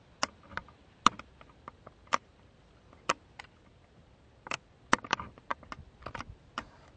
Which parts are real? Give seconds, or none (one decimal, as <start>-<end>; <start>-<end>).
0.0-7.0